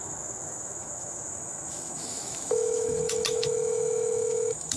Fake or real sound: fake